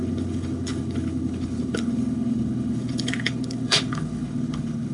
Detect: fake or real fake